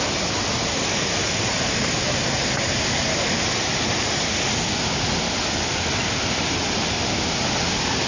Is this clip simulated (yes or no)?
no